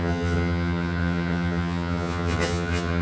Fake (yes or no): yes